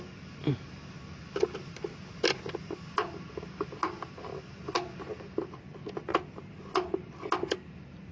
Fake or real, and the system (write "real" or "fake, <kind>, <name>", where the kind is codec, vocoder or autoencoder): real